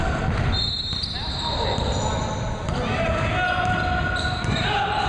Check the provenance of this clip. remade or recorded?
recorded